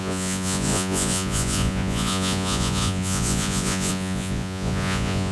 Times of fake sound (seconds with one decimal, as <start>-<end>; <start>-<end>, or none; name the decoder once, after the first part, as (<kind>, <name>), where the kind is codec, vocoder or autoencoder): 0.0-5.3 (vocoder, Vocos)